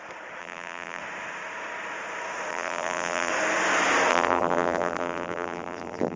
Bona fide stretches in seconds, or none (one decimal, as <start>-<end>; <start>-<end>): 0.0-0.4; 1.0-2.5; 3.3-4.1